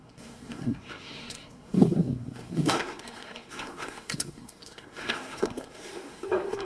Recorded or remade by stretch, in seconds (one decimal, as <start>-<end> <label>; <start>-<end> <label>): 0.0-6.7 remade